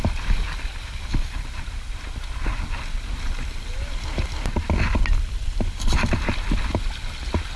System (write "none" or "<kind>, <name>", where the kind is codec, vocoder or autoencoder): none